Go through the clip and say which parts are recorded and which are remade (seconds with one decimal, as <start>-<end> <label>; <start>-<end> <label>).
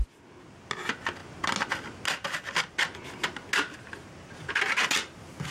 0.0-5.5 recorded